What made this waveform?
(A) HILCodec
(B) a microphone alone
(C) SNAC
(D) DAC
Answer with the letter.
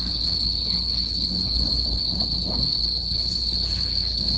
A